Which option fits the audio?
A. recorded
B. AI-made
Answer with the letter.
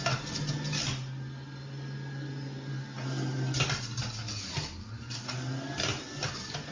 A